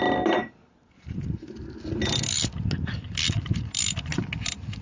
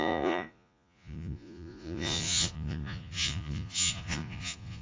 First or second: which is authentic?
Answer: first